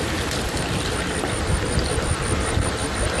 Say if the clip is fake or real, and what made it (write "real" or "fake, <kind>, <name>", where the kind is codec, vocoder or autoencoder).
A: real